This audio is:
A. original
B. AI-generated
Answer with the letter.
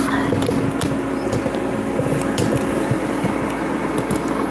A